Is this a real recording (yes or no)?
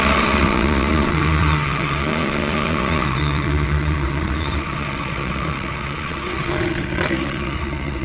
no